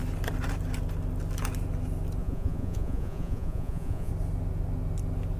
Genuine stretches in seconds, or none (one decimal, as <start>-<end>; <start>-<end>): 0.0-2.2; 4.1-5.4